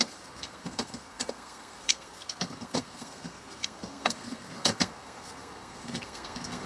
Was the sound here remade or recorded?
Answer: remade